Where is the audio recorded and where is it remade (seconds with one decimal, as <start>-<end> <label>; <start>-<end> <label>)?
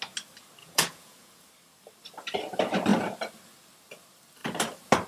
0.0-0.6 recorded; 0.6-1.5 remade; 1.5-5.1 recorded